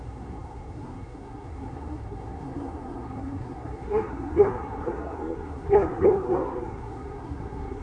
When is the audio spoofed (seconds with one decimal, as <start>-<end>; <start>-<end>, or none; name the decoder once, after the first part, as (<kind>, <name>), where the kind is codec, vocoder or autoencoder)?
0.0-7.8 (codec, SNAC)

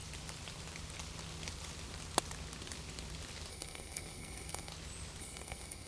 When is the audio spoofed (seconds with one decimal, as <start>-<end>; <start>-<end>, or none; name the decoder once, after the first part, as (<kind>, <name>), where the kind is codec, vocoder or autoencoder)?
3.5-4.7 (codec, SNAC); 5.2-5.9

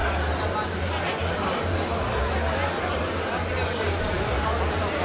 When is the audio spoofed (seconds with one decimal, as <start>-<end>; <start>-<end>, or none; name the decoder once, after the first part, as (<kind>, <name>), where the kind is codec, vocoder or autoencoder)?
none